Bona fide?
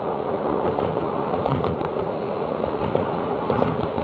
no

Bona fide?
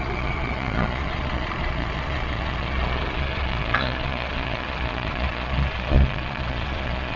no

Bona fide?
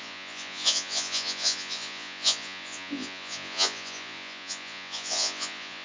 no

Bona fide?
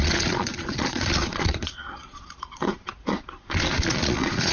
no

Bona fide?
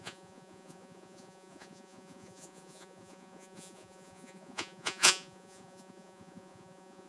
no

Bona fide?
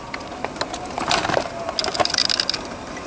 yes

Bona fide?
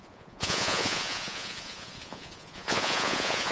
no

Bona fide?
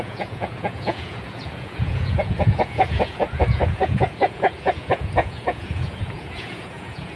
no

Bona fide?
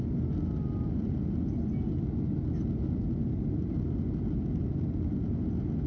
yes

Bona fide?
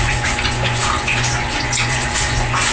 no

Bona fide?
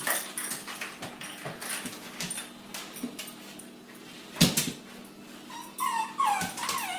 yes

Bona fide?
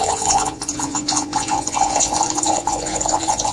no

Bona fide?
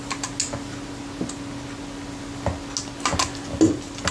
yes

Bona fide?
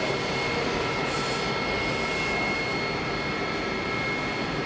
yes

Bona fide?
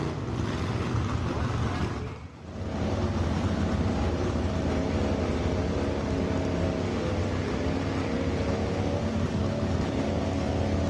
yes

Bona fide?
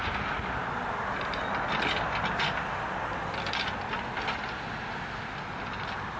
yes